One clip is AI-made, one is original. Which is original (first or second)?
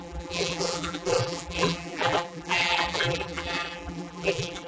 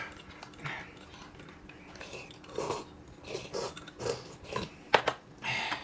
second